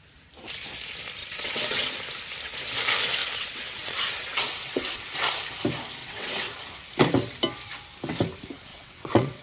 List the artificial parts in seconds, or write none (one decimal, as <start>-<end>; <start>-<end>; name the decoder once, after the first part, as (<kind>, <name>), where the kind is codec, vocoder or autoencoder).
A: 1.2-1.9 (vocoder, WaveNeXt); 3.2-5.1; 6.0-6.5; 8.7-9.4